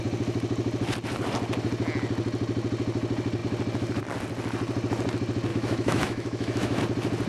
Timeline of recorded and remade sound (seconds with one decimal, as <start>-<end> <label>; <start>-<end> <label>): 0.0-5.5 recorded; 5.5-6.8 remade; 6.8-7.3 recorded